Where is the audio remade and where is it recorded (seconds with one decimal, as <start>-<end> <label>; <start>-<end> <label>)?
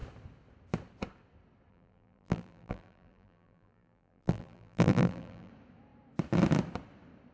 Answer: 0.0-1.7 recorded; 1.7-5.5 remade; 5.5-7.3 recorded